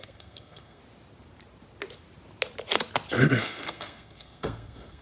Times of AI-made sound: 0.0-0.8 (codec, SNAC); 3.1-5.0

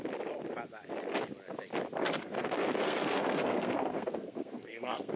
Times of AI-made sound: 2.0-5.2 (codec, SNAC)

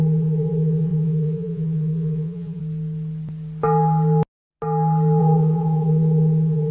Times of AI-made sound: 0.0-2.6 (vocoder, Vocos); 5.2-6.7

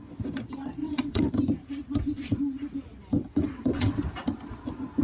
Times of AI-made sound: 0.8-1.3 (vocoder, WaveNeXt); 3.2-4.0